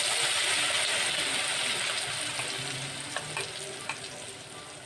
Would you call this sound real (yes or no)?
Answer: yes